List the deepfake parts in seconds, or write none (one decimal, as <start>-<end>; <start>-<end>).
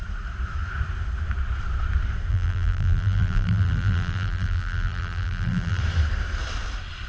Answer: 2.3-5.8